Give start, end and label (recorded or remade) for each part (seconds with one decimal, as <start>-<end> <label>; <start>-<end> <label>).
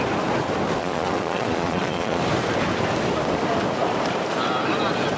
0.0-0.8 recorded; 0.8-2.2 remade; 2.2-5.2 recorded